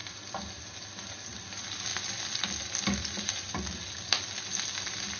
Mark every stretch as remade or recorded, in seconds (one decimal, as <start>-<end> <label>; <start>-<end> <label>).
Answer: 0.0-5.2 recorded